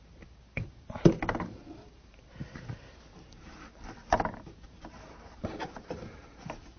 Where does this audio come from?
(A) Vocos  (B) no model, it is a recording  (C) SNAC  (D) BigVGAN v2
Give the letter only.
D